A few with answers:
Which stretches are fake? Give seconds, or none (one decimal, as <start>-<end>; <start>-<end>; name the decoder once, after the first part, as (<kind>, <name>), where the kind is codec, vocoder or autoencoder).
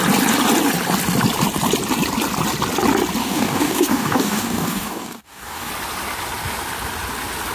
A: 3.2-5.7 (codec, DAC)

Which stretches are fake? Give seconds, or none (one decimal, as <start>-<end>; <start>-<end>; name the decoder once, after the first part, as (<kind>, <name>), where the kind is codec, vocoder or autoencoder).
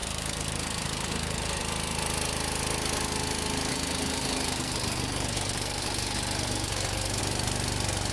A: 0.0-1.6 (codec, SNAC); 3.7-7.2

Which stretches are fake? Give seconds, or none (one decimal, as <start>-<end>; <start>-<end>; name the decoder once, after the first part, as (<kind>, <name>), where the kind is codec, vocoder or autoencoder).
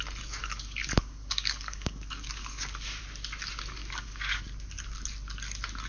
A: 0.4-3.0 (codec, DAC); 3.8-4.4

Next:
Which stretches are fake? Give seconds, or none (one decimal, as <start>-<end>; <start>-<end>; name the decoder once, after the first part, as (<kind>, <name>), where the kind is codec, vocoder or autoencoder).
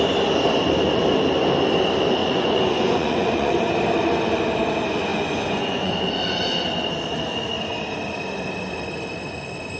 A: 2.2-3.5 (vocoder, Vocos); 5.1-5.9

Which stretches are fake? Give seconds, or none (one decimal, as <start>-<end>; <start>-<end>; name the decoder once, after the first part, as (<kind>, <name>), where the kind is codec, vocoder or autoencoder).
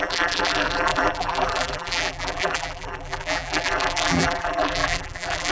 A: 0.0-5.5 (vocoder, BigVGAN v2)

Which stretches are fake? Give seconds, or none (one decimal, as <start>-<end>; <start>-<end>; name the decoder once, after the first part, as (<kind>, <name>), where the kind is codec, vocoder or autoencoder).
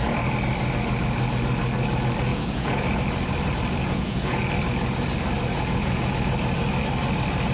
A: 2.3-2.8 (vocoder, Vocos); 3.8-4.4; 5.5-6.1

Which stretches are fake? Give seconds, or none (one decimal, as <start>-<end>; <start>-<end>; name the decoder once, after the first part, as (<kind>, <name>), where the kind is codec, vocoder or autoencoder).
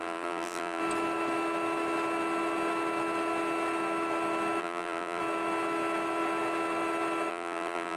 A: 0.0-0.8 (vocoder, BigVGAN v2); 4.6-5.2; 7.3-8.0